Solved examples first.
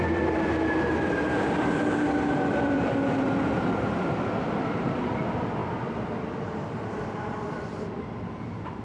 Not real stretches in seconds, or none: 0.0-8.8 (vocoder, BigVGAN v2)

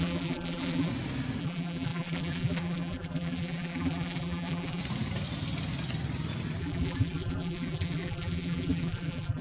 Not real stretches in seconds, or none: 0.0-0.9 (vocoder, BigVGAN v2); 1.4-4.8; 6.6-9.4

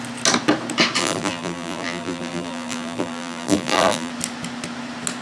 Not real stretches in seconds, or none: 1.0-4.1 (vocoder, BigVGAN v2)

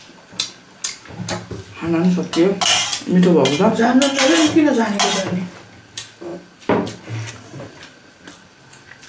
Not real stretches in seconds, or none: none